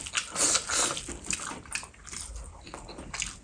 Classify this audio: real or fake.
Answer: real